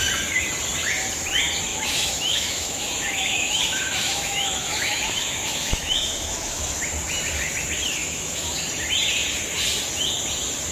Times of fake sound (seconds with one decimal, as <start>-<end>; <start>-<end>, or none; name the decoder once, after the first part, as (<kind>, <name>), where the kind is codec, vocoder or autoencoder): 1.7-6.8 (autoencoder, DAC-VAE); 8.0-8.6